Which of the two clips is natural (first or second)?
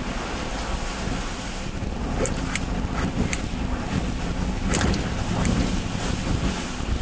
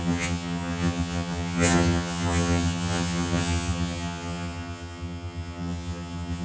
first